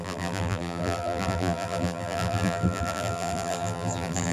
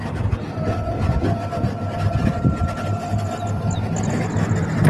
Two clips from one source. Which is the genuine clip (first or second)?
second